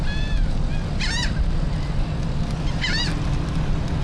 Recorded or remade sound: recorded